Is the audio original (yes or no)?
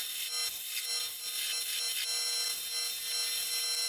yes